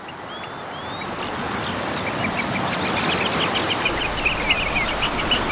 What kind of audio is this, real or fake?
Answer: real